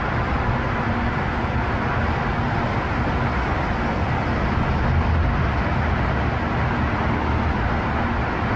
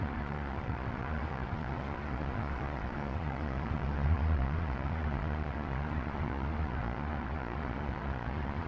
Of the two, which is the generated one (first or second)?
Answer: second